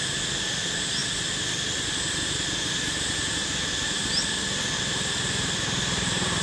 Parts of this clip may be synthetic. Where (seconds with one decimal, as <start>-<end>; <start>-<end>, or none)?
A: none